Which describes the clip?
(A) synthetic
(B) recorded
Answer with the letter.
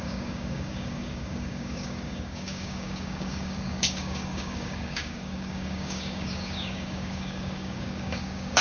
A